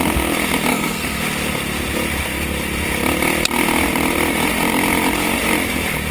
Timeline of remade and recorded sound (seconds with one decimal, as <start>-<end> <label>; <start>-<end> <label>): 0.0-0.7 recorded; 0.7-1.2 remade; 1.2-6.1 recorded